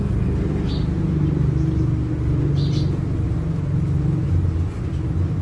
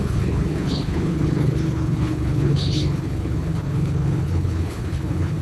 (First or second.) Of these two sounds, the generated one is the second